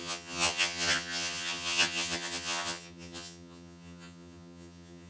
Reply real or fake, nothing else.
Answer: fake